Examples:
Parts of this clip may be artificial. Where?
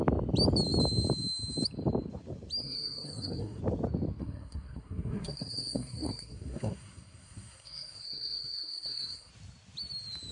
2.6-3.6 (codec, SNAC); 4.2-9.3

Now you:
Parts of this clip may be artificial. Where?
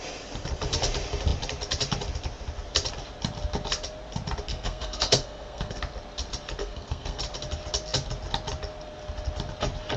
4.5-5.8 (codec, SNAC); 6.6-7.2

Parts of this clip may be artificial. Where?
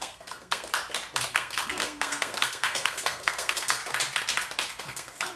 0.0-0.7 (codec, SNAC); 1.3-3.8; 4.8-5.4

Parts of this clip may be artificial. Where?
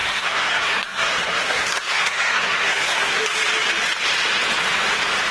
0.0-3.2 (codec, SNAC)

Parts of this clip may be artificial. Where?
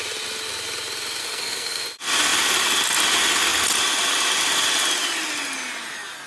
1.2-1.8 (codec, SNAC)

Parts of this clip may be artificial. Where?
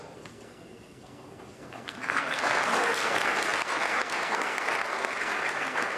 0.0-6.0 (codec, SNAC)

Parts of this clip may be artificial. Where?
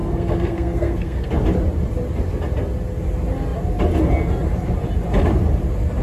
0.0-1.3 (codec, SNAC)